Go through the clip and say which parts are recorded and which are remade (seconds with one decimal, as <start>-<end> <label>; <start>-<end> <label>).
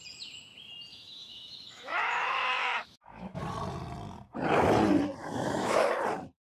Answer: 0.0-0.9 recorded; 0.9-3.4 remade; 3.4-5.2 recorded; 5.2-5.9 remade; 5.9-6.4 recorded